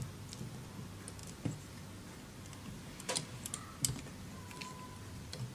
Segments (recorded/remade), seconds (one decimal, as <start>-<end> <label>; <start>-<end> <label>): 0.0-5.5 recorded